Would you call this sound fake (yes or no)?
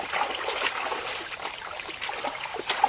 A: yes